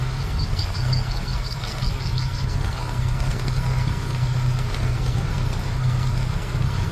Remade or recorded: remade